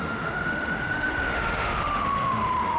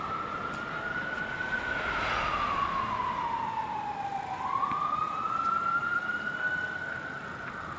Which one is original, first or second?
second